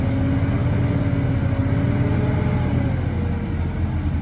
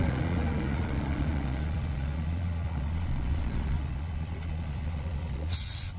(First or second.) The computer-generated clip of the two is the second